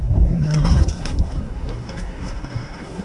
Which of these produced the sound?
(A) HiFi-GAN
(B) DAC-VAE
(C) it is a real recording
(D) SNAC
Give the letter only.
D